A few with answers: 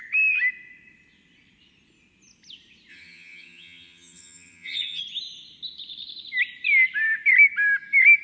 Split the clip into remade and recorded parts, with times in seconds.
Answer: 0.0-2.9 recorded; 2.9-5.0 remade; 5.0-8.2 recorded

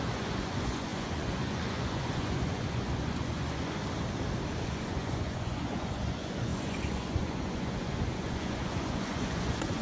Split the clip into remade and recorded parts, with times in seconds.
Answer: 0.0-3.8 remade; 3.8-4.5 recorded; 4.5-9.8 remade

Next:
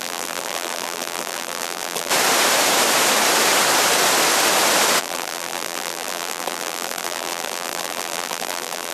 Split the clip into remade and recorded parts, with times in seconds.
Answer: 0.0-2.1 remade; 2.1-5.0 recorded; 5.0-8.9 remade